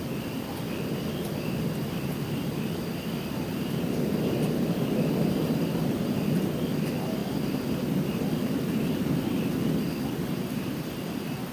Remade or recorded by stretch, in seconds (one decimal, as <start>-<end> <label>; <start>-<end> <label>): 0.0-10.4 recorded; 10.4-11.5 remade